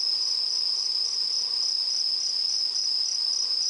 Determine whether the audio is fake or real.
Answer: real